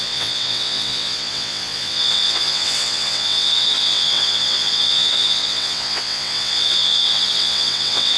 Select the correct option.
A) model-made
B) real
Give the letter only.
A